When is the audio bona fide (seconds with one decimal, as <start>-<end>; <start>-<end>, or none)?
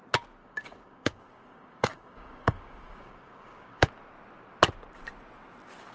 0.0-0.4; 3.9-5.9